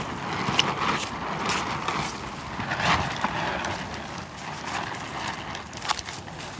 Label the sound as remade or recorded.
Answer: recorded